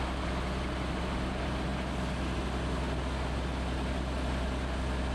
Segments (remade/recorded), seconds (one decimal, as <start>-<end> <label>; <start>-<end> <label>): 0.0-5.1 recorded